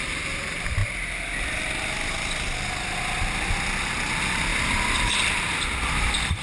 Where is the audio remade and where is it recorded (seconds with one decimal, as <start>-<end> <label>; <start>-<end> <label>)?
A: 0.0-0.8 remade; 0.8-4.1 recorded; 4.1-4.5 remade; 4.5-5.2 recorded; 5.2-6.4 remade